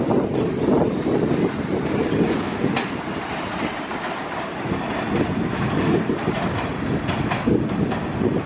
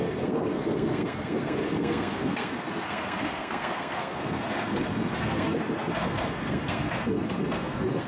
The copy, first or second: second